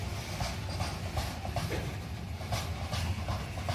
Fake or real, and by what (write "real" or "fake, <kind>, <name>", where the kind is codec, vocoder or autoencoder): real